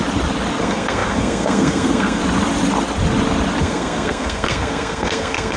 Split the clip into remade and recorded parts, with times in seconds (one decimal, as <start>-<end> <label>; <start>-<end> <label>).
0.0-0.6 recorded; 0.6-2.2 remade; 2.2-3.6 recorded; 3.6-5.6 remade